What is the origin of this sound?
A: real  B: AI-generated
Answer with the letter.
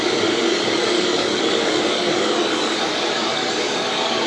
B